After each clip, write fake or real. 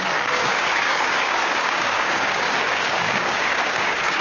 fake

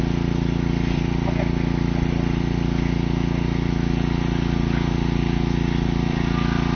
real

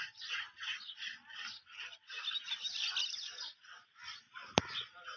real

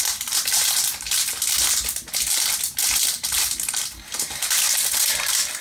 real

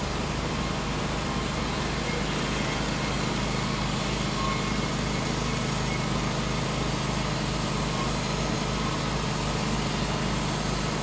real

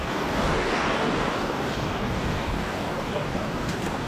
fake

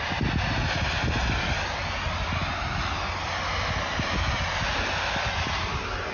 real